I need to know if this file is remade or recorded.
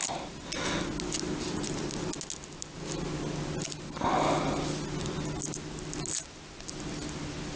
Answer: recorded